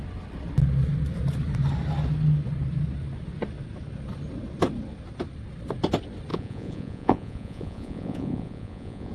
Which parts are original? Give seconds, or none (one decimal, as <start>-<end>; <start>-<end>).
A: 0.0-6.3